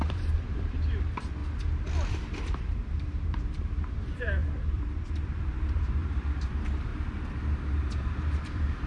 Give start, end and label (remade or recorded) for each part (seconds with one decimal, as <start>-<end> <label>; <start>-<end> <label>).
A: 0.0-1.4 remade; 1.4-2.1 recorded; 2.1-6.9 remade; 6.9-7.5 recorded; 7.5-8.9 remade